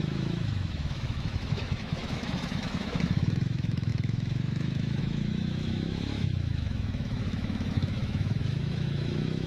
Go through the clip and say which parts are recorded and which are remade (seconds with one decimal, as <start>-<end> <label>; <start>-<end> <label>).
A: 0.0-9.5 remade